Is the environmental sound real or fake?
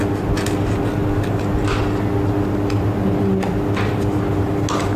real